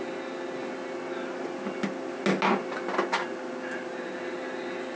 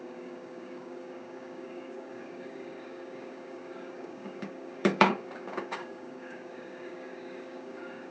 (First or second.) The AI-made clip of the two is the second